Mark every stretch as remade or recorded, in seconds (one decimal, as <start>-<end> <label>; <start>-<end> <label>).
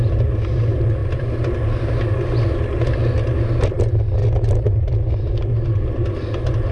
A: 0.0-6.7 recorded